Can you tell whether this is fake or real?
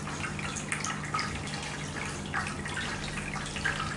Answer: real